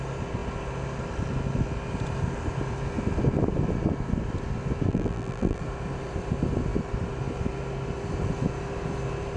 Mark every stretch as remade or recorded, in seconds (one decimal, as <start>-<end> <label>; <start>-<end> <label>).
0.0-4.9 recorded; 4.9-5.6 remade; 5.6-9.4 recorded